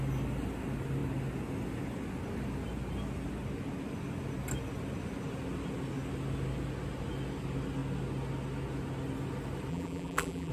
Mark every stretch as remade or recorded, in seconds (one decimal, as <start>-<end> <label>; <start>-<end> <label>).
0.0-9.7 recorded; 9.7-10.5 remade